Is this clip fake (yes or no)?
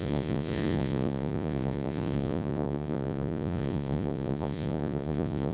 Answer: yes